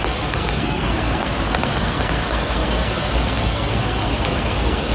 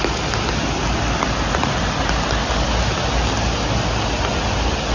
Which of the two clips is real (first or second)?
second